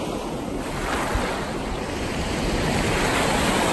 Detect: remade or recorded recorded